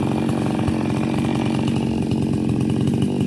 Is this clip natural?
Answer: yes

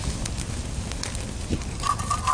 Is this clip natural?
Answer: no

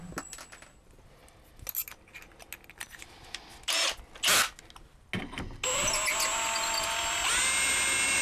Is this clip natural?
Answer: yes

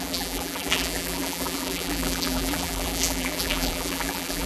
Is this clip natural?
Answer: no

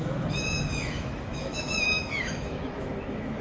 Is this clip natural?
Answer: no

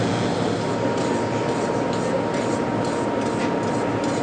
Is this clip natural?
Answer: yes